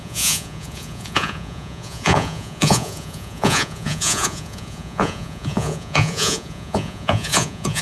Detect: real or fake fake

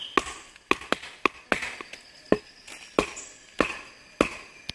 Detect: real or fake real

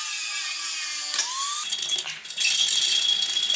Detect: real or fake real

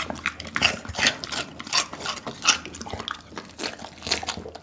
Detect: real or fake real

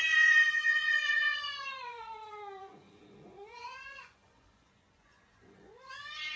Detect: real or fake fake